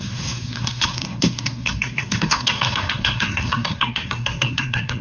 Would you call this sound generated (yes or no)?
yes